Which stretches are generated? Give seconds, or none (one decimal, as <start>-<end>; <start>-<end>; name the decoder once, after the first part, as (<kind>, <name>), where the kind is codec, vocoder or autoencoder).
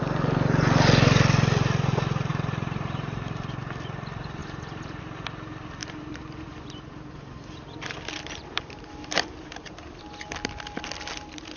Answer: 2.3-3.6 (vocoder, BigVGAN v2); 4.4-5.0; 5.8-9.7